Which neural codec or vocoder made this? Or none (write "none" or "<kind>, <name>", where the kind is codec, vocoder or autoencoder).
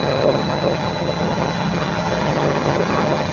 vocoder, HiFi-GAN